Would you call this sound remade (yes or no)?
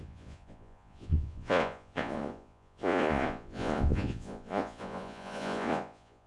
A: yes